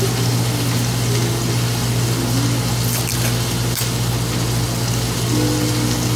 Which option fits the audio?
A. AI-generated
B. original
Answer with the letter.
B